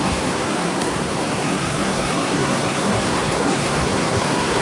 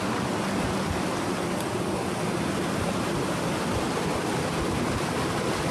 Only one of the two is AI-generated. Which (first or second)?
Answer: first